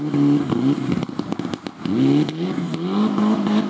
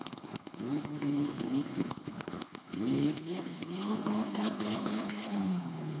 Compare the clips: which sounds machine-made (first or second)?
second